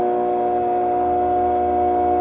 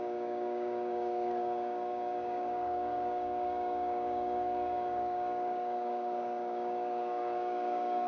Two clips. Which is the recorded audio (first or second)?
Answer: first